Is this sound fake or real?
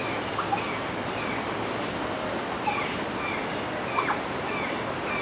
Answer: real